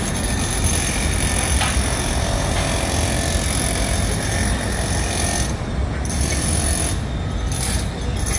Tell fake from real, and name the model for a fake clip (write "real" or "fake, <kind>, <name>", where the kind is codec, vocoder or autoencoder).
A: real